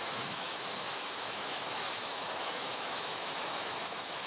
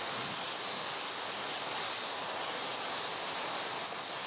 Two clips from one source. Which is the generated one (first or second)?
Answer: first